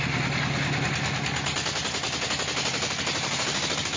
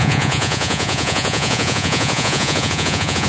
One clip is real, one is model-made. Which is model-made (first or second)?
second